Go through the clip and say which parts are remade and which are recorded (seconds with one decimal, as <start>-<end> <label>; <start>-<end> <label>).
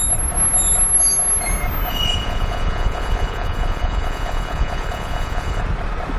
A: 0.0-1.9 recorded; 1.9-5.6 remade; 5.6-6.2 recorded